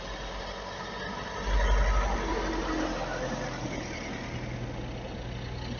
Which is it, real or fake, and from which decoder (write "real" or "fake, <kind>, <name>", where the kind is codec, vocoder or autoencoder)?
real